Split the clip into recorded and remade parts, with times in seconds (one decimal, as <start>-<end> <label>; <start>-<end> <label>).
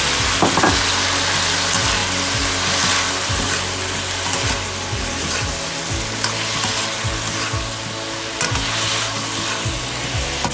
0.0-10.5 recorded